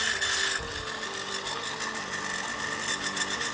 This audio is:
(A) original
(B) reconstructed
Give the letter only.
A